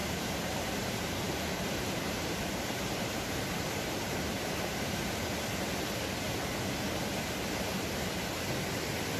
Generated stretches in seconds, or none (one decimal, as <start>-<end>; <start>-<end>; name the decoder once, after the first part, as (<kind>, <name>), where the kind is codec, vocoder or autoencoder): 0.0-5.1 (vocoder, BigVGAN v2)

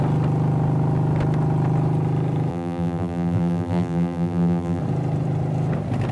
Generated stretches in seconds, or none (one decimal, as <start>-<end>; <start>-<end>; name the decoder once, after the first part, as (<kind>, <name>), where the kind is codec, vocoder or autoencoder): 2.5-4.8 (vocoder, BigVGAN v2)

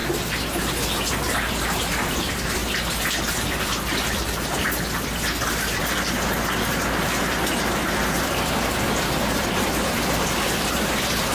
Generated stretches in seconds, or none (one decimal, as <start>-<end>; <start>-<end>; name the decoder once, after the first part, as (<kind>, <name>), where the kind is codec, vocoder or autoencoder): 1.1-2.6 (vocoder, BigVGAN v2); 7.5-11.3

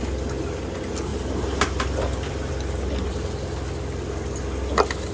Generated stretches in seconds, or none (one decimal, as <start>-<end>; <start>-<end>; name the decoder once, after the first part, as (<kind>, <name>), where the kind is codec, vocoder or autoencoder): 1.1-2.5 (vocoder, BigVGAN v2)

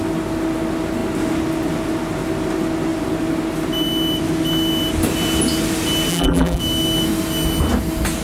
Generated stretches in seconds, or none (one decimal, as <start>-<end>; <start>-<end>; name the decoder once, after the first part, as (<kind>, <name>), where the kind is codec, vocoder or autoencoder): 6.1-6.6 (vocoder, BigVGAN v2)

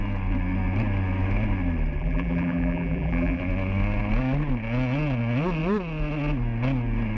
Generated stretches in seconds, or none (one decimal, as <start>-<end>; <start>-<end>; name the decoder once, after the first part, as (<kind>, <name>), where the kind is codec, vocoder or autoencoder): 2.0-3.4 (vocoder, BigVGAN v2)

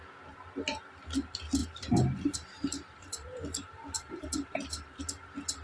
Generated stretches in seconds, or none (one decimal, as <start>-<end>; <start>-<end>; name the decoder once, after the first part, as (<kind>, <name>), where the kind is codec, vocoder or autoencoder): 1.6-5.0 (vocoder, BigVGAN v2)